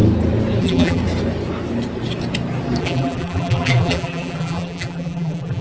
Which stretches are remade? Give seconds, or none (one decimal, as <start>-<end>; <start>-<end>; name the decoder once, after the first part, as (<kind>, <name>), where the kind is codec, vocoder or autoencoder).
0.6-1.0 (vocoder, BigVGAN v2); 2.8-5.6